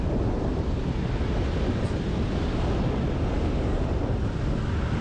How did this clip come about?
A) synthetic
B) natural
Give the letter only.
B